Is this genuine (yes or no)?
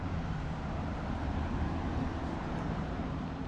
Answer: no